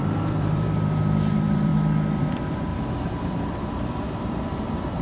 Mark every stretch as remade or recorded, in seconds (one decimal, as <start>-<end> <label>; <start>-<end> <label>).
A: 0.0-1.7 remade; 1.7-2.2 recorded; 2.2-2.7 remade; 2.7-3.2 recorded; 3.2-5.0 remade